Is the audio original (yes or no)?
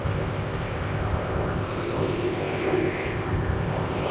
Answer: no